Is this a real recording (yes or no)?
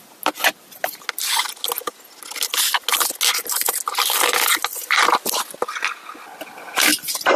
yes